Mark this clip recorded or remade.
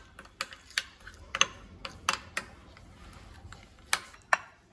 recorded